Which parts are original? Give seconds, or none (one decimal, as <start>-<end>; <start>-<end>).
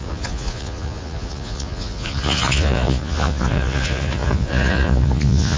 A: none